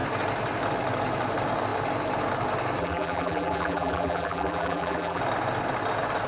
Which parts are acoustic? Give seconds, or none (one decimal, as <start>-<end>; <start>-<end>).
0.0-2.8; 5.2-6.3